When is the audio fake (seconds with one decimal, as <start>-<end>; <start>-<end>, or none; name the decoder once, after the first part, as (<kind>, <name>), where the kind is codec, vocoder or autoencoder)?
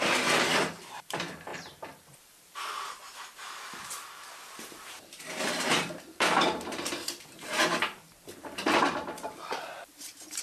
0.0-10.4 (vocoder, BigVGAN v2)